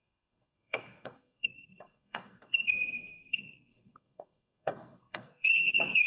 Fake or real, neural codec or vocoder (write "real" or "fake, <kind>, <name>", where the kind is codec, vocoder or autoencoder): fake, codec, SNAC